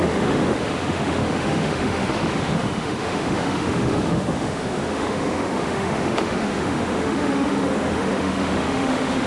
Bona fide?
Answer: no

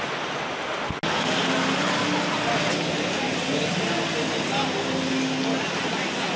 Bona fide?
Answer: yes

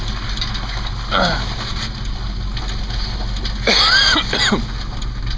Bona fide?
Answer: yes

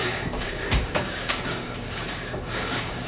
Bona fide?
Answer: no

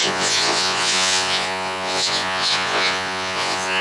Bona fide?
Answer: no